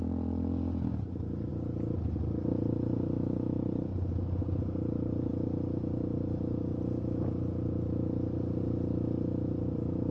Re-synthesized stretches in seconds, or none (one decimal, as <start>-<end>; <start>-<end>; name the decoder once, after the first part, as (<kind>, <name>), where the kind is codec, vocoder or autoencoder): 0.9-1.5 (codec, DAC)